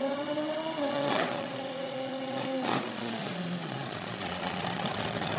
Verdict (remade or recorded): remade